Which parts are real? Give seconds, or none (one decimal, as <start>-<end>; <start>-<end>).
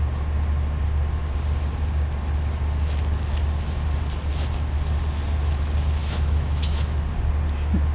0.0-6.0; 7.0-7.9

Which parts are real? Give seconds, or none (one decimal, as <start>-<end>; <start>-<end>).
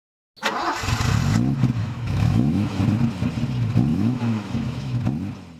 0.0-1.8; 2.8-3.9; 5.0-5.6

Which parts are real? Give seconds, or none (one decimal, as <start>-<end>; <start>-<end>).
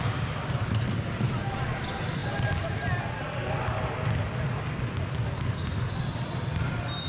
0.0-7.1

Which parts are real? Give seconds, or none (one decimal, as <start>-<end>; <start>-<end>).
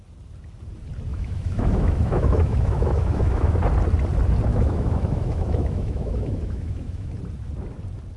0.0-1.1; 3.6-4.5; 7.1-8.2